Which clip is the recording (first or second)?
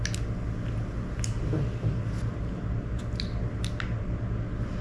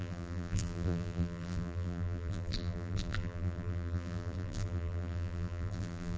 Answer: first